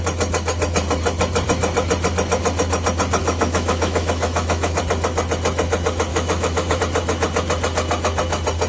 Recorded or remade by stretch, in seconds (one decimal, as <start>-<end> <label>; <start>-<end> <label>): 0.0-3.2 recorded; 3.2-4.8 remade; 4.8-6.1 recorded; 6.1-6.8 remade; 6.8-8.7 recorded